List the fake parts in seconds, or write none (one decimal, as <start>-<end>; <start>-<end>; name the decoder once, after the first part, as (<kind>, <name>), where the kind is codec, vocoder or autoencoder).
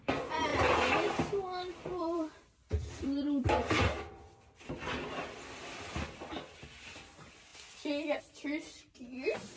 1.9-7.1 (vocoder, BigVGAN v2)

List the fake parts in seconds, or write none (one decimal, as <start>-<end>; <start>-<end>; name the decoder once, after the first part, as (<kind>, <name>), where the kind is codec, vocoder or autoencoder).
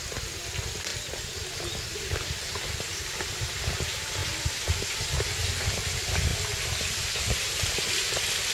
4.2-5.4 (vocoder, BigVGAN v2); 6.3-7.2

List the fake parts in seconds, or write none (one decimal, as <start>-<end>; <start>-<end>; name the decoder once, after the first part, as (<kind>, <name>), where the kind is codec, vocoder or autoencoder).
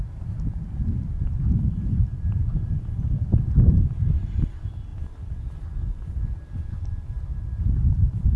0.0-4.9 (vocoder, BigVGAN v2); 6.8-8.4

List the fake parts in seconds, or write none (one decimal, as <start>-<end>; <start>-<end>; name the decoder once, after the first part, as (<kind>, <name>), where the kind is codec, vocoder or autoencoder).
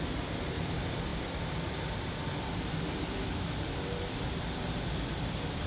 0.0-5.7 (vocoder, BigVGAN v2)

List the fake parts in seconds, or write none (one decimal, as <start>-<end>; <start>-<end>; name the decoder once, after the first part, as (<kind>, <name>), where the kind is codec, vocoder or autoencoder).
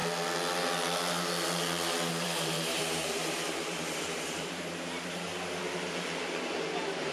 2.1-5.3 (vocoder, BigVGAN v2); 6.4-7.1